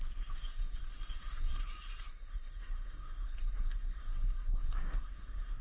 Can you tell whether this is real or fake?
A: fake